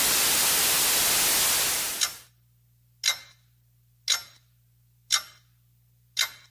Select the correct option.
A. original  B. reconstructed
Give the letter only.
A